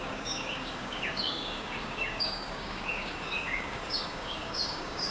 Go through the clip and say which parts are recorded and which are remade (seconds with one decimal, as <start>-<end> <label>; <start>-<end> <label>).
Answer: 0.0-5.1 remade